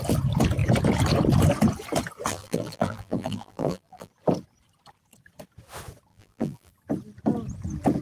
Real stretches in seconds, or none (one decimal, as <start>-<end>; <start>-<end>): 0.0-2.3; 4.1-6.1; 6.7-8.0